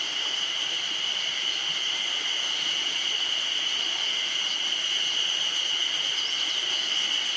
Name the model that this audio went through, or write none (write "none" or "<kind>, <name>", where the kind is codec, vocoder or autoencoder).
none